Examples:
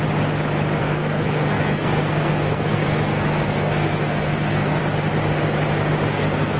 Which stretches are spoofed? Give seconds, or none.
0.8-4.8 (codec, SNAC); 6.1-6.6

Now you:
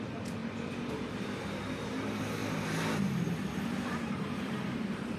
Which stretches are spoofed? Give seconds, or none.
0.0-0.4 (vocoder, BigVGAN v2); 0.9-2.4; 3.0-5.2

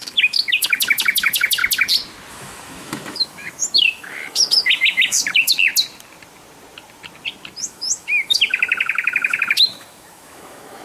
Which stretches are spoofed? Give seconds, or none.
0.0-1.6 (autoencoder, DAC-VAE); 2.3-5.7; 7.6-10.8

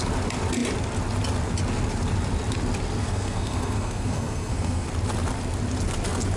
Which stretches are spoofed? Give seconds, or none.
3.0-4.9 (codec, SNAC)